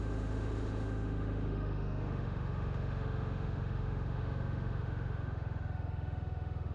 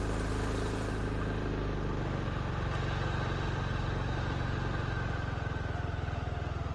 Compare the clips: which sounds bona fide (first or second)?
second